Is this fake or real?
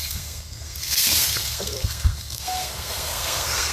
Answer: fake